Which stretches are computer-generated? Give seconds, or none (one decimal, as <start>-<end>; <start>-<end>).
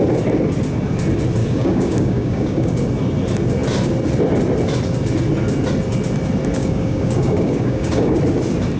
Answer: 1.4-2.7; 6.6-8.2